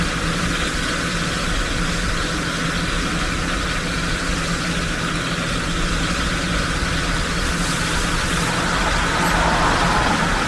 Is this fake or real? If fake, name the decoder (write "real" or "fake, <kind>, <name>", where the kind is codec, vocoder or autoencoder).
real